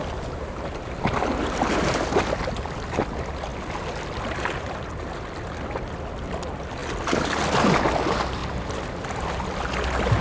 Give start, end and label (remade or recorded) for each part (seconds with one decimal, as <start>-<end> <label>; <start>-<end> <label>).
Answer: 0.0-10.2 recorded